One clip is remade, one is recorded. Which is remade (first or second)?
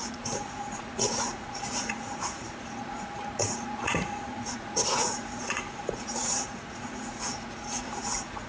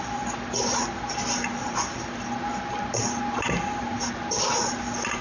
first